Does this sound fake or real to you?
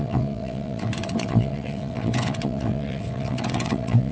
fake